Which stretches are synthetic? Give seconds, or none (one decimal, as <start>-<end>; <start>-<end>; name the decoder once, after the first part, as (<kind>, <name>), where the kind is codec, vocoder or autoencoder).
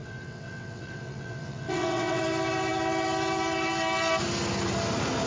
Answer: 0.0-2.2 (vocoder, WaveNeXt)